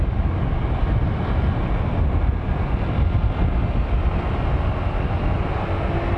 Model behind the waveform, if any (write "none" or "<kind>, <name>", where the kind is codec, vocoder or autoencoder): none